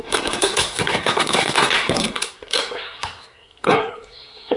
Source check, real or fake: fake